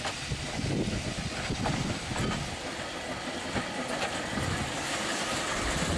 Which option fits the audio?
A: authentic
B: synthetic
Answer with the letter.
A